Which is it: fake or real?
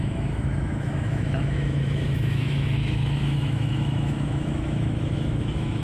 fake